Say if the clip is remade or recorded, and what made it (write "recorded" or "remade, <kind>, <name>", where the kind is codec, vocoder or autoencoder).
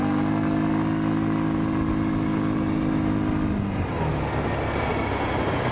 recorded